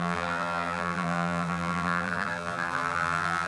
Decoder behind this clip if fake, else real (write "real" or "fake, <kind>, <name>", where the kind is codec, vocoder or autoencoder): fake, vocoder, BigVGAN v2